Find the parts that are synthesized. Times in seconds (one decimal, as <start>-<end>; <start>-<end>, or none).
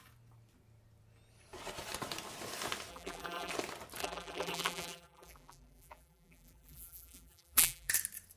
2.9-3.5; 4.0-7.9